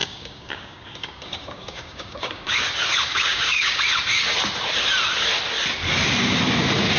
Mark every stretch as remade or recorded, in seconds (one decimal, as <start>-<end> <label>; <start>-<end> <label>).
0.0-2.6 remade; 2.6-3.1 recorded; 3.1-3.8 remade; 3.8-7.0 recorded